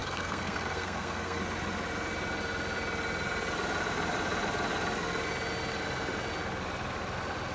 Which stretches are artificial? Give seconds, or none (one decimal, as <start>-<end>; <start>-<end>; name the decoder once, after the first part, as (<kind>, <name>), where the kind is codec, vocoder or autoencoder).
0.0-1.4 (codec, SNAC)